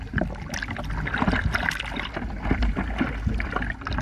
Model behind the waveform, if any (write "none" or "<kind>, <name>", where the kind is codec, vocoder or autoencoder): none